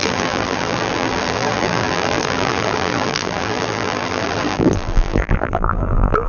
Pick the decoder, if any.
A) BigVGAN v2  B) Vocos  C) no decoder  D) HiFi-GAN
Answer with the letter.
A